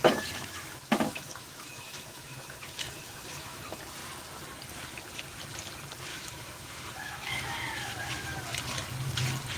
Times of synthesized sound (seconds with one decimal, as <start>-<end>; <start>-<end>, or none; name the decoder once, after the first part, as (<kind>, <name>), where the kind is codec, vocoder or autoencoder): 0.0-3.6 (autoencoder, DAC-VAE); 6.1-8.4